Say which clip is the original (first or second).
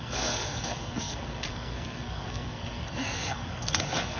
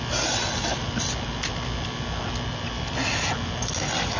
second